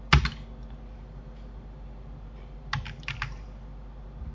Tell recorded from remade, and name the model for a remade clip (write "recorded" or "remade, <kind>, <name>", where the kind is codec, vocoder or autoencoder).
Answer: recorded